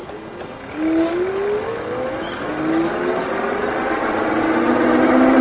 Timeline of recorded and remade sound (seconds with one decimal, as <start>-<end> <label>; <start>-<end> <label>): 0.0-5.4 recorded